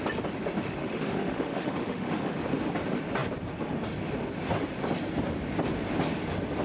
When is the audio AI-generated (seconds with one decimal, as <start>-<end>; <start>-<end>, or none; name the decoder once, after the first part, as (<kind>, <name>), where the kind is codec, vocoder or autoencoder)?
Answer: 0.8-2.4 (autoencoder, DAC-VAE)